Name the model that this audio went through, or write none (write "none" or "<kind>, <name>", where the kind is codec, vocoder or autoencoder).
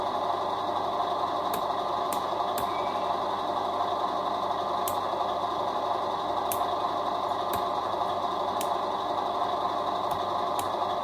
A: none